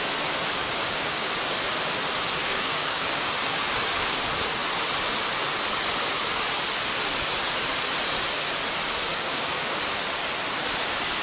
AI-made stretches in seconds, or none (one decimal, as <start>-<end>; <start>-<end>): 0.6-1.3; 2.4-3.6; 9.1-9.8